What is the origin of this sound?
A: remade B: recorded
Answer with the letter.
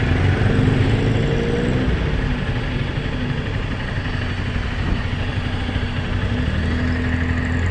B